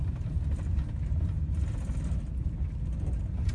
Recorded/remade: recorded